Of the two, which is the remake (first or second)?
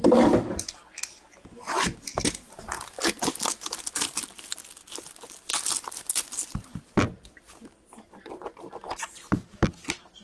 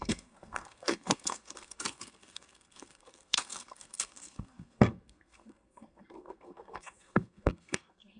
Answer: second